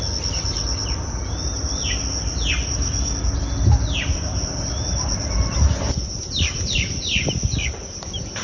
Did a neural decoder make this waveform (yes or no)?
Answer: no